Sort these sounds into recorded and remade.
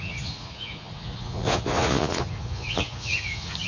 remade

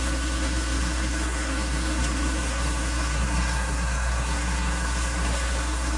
remade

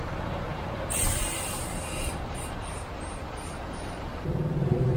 remade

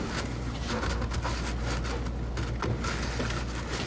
recorded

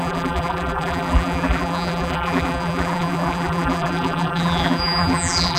remade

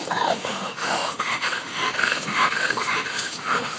remade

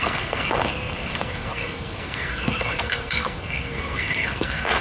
remade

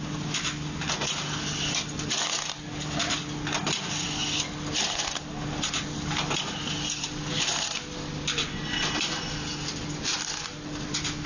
recorded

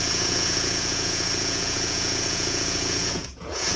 remade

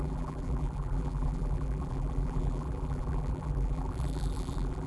remade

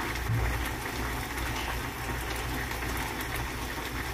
recorded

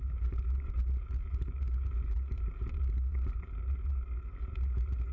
remade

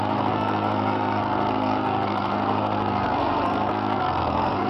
remade